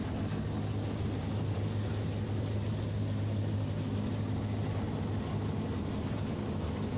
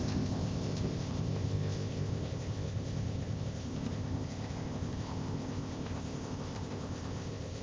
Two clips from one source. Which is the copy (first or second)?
second